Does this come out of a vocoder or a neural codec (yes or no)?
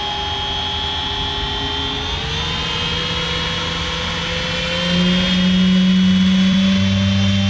no